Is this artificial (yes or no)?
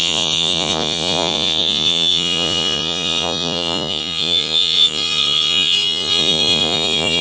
yes